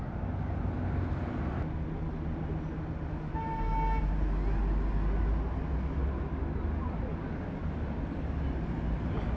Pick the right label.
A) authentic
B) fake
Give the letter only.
A